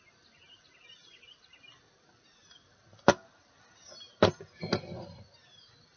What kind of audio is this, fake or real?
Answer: real